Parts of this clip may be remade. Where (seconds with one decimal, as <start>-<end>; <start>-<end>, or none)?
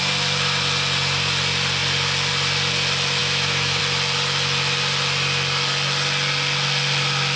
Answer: 3.2-3.8